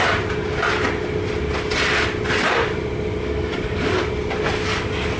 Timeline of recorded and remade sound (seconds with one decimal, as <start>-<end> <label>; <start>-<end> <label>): 0.0-3.2 recorded; 3.2-4.1 remade; 4.1-4.7 recorded; 4.7-5.2 remade